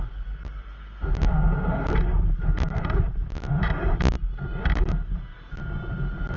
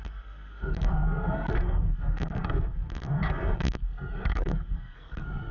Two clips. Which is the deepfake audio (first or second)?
second